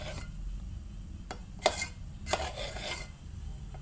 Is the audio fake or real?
real